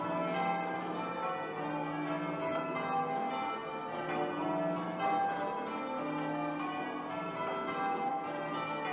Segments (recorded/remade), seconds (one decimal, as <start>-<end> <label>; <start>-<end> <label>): 0.0-8.9 recorded